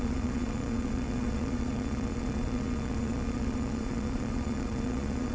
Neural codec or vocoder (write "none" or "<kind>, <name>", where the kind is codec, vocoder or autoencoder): vocoder, Vocos